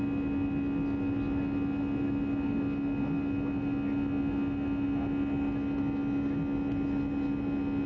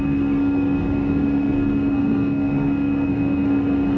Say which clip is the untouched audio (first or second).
first